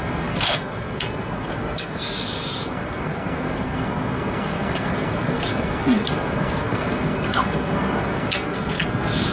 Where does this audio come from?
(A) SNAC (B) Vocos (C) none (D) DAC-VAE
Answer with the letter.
A